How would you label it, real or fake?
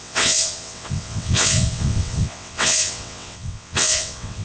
fake